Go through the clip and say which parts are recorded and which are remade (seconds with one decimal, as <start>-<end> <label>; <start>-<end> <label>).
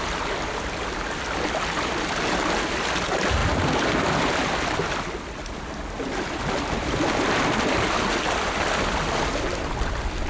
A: 0.0-10.3 recorded